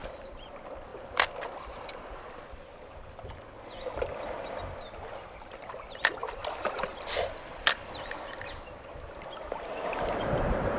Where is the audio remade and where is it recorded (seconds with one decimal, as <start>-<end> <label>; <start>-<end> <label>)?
0.0-0.5 remade; 0.5-0.9 recorded; 0.9-2.4 remade; 2.4-6.2 recorded; 6.2-9.6 remade; 9.6-10.8 recorded